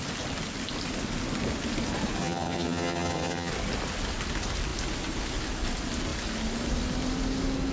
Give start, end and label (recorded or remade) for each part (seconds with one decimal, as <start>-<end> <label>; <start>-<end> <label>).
0.0-2.2 recorded; 2.2-3.5 remade; 3.5-7.7 recorded